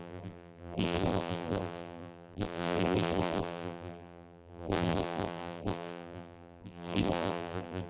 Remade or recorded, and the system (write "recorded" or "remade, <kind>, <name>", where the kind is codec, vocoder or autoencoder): remade, vocoder, BigVGAN v2